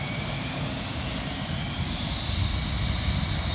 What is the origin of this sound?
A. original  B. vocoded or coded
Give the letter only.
A